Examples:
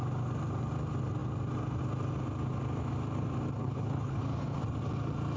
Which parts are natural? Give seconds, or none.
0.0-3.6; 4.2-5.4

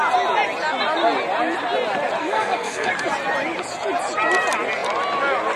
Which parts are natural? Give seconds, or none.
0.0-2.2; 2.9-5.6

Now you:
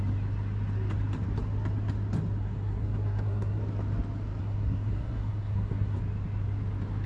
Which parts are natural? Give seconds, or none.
0.0-2.4; 3.6-4.4; 6.0-7.1